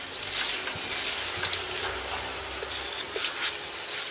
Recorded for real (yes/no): yes